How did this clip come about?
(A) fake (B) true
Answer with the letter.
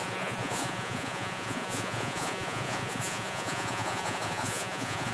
A